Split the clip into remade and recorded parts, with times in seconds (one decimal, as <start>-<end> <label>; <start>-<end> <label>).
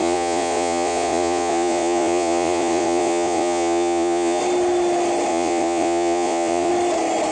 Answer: 0.0-4.4 remade; 4.4-5.3 recorded; 5.3-6.7 remade; 6.7-7.3 recorded